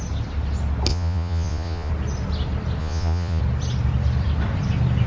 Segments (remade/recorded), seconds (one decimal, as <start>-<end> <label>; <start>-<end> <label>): 0.0-0.9 recorded; 0.9-1.9 remade; 1.9-2.8 recorded; 2.8-3.4 remade; 3.4-5.1 recorded